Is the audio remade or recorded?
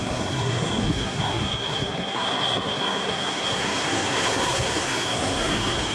remade